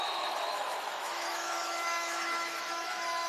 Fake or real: fake